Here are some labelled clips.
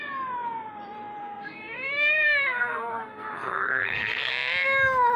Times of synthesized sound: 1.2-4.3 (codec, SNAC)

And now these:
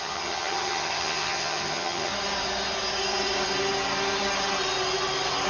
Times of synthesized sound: 0.0-2.1 (vocoder, HiFi-GAN)

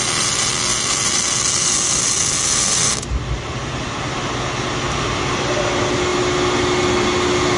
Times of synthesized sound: none

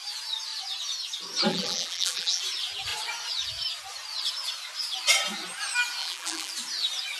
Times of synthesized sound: 1.5-2.4 (vocoder, BigVGAN v2); 6.0-6.5

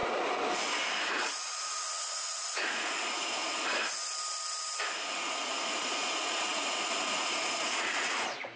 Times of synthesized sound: 1.1-3.4 (vocoder, Vocos); 5.1-8.6